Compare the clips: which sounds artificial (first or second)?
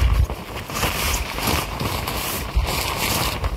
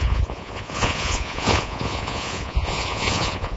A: second